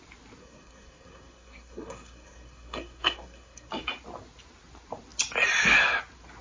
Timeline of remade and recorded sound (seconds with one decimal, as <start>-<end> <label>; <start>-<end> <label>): 0.0-0.4 recorded; 0.4-3.7 remade; 3.7-6.4 recorded